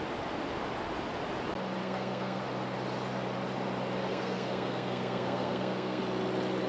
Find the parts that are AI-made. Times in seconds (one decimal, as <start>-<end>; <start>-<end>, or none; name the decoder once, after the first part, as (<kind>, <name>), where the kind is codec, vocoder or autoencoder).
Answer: 1.8-2.4 (codec, SNAC); 4.1-6.0